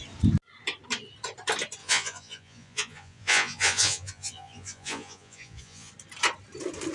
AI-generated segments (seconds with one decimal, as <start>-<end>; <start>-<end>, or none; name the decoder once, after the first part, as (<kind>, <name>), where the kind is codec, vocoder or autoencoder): 1.8-5.9 (vocoder, Vocos)